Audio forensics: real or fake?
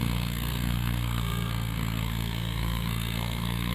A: fake